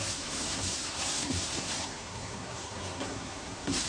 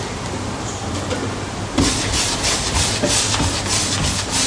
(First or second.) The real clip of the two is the second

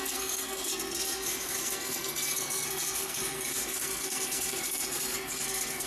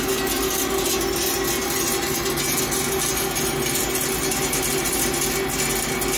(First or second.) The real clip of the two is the second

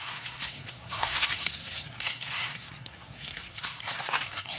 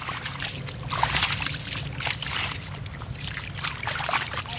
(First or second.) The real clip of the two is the second